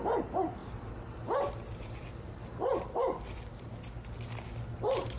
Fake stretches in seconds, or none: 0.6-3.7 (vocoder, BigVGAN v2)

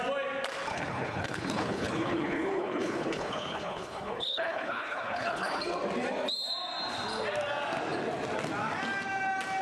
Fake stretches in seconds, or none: 0.7-5.6 (codec, HILCodec)

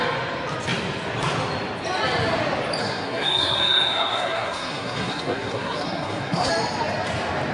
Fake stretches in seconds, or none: 2.8-6.5 (codec, SNAC)